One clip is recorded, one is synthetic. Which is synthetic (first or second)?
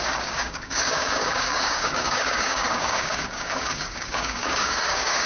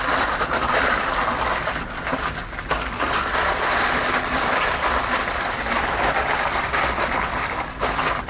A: first